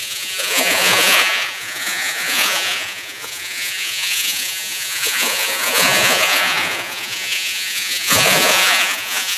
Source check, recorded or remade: remade